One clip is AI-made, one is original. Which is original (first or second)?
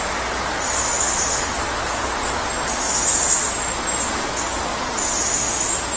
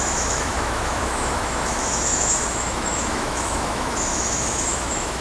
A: first